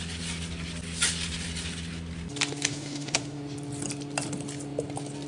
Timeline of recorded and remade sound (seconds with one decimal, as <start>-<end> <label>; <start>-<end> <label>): 0.0-2.7 recorded; 2.7-3.4 remade; 3.4-5.3 recorded